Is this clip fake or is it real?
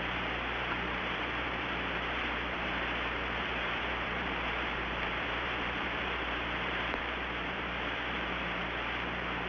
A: fake